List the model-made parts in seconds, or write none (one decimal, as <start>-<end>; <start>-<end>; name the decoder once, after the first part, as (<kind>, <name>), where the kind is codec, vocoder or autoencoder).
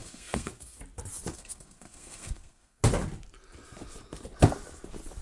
0.0-0.8 (codec, SNAC); 1.3-2.8